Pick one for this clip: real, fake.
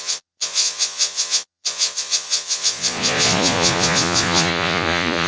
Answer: fake